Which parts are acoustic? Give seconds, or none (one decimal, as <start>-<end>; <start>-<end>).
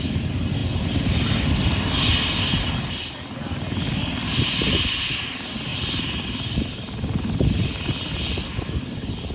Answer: 0.0-9.3